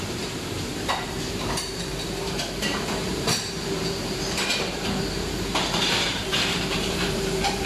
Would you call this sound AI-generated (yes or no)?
yes